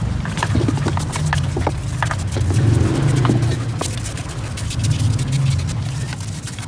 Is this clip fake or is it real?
real